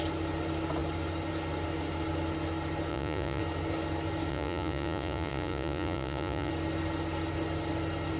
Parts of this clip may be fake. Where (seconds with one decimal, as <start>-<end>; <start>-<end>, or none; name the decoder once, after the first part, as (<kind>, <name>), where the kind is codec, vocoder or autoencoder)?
2.9-3.4 (vocoder, Vocos); 4.3-6.5